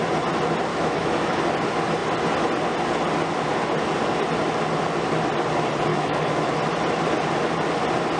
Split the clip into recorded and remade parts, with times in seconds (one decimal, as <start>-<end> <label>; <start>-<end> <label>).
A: 0.0-0.7 recorded; 0.7-1.4 remade; 1.4-5.9 recorded; 5.9-6.5 remade; 6.5-8.2 recorded